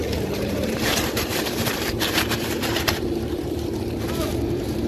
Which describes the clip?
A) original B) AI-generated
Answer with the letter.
B